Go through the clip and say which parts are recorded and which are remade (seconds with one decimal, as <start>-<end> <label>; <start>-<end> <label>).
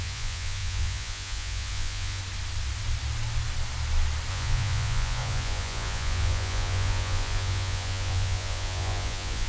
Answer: 0.0-2.2 remade; 2.2-4.3 recorded; 4.3-9.5 remade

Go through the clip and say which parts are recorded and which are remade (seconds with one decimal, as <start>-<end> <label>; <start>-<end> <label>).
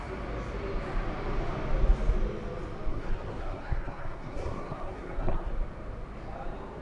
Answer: 0.0-2.9 recorded; 2.9-5.5 remade; 5.5-6.8 recorded